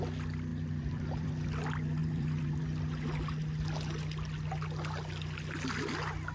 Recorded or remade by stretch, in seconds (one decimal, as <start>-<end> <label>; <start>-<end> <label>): 0.0-0.5 recorded; 0.5-1.3 remade; 1.3-2.0 recorded; 2.0-2.6 remade; 2.6-6.3 recorded